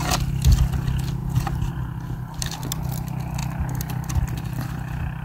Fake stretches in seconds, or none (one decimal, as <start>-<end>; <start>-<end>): none